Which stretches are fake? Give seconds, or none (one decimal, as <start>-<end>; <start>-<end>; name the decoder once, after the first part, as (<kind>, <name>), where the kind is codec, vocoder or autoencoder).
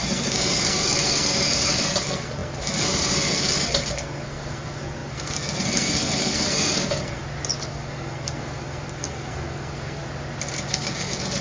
0.0-7.2 (codec, SNAC); 7.7-10.0; 10.7-11.4